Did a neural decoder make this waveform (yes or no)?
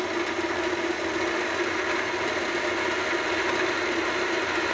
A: no